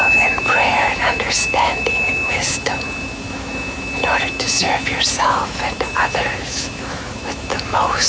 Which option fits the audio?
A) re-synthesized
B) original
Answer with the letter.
A